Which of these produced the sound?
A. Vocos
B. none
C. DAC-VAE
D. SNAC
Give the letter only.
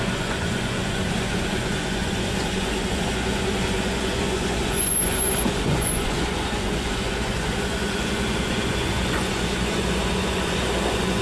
A